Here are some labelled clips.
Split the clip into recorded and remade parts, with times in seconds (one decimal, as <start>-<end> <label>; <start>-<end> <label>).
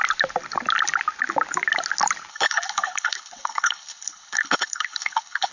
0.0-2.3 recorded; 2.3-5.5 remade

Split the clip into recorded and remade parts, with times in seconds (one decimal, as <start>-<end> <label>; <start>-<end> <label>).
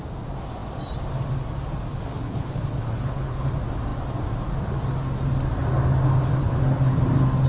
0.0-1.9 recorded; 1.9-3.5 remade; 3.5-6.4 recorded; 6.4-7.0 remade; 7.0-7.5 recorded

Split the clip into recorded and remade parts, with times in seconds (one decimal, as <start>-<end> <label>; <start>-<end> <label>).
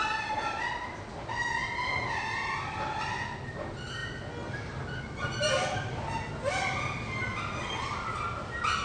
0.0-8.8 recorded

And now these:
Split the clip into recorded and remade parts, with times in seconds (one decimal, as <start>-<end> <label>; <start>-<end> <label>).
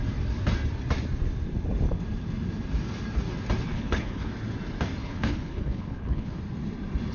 0.0-3.7 recorded; 3.7-4.3 remade; 4.3-5.0 recorded; 5.0-6.4 remade; 6.4-7.1 recorded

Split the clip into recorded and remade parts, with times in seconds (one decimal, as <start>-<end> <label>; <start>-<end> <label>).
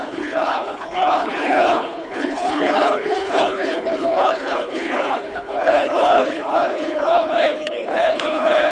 0.0-8.7 remade